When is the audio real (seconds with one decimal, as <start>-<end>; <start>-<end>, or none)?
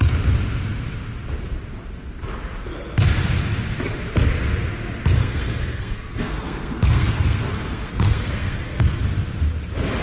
0.0-5.2; 9.0-10.0